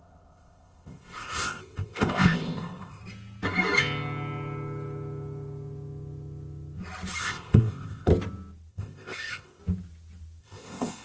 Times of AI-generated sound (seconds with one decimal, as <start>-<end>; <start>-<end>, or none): 0.0-3.0; 7.2-8.1; 8.7-9.6; 10.4-11.0

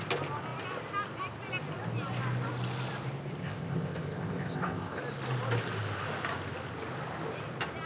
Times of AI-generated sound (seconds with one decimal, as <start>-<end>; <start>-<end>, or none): 3.4-5.0